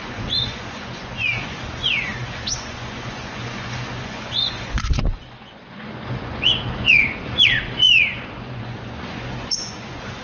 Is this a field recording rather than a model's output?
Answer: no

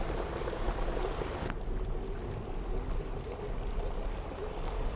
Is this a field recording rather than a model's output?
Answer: yes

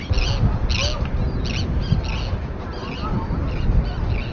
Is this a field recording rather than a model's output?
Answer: yes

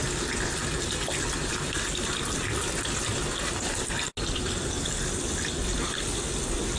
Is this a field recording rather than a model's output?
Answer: yes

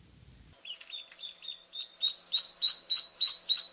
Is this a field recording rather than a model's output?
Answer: yes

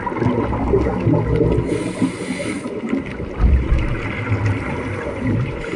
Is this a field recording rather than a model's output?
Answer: yes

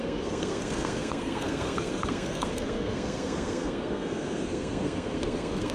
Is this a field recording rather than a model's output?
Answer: no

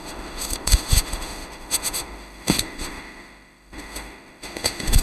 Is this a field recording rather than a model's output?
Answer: no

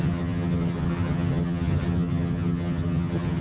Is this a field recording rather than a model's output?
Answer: no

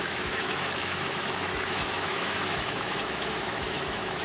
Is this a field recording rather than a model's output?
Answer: no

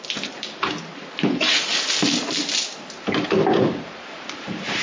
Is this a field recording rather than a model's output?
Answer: yes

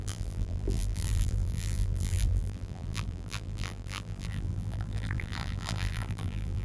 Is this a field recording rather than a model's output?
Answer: no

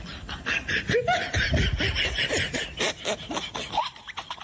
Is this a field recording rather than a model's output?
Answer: no